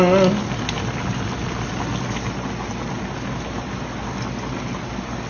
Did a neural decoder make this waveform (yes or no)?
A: no